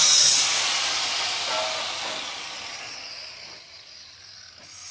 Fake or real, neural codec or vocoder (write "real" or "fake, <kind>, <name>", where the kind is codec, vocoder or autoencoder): real